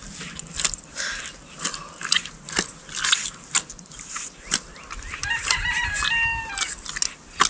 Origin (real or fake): real